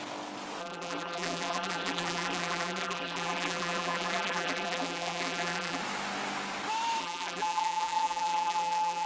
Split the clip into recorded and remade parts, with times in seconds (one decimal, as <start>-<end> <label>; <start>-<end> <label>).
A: 0.0-0.6 recorded; 0.6-5.8 remade; 5.8-7.0 recorded; 7.0-9.1 remade